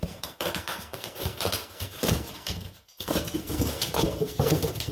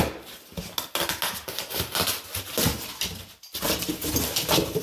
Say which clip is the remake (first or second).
first